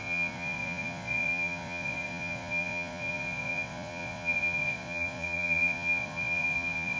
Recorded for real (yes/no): no